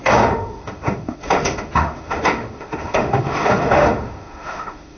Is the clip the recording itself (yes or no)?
no